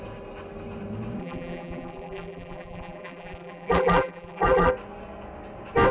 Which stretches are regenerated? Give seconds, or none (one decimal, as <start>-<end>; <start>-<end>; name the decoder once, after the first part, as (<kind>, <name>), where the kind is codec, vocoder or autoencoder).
1.2-4.7 (vocoder, BigVGAN v2)